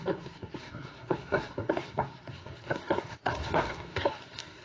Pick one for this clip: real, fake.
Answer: fake